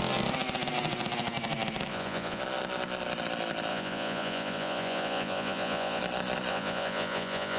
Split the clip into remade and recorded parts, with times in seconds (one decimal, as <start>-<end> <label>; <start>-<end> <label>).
0.0-1.9 recorded; 1.9-2.4 remade; 2.4-3.7 recorded; 3.7-6.0 remade; 6.0-6.5 recorded; 6.5-7.6 remade